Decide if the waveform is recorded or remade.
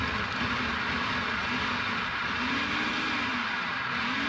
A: recorded